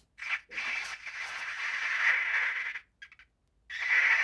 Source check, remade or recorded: recorded